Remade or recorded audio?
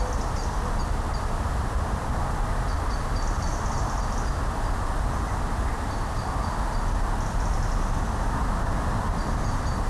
recorded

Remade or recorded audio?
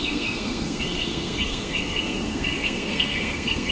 remade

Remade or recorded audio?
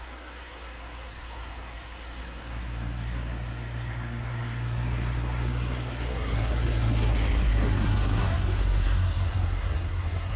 remade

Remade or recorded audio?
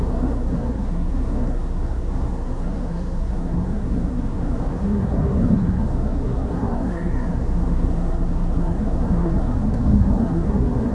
remade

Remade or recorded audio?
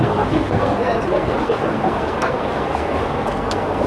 remade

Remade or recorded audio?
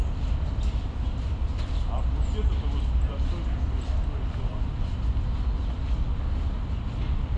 recorded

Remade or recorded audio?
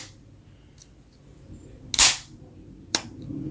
recorded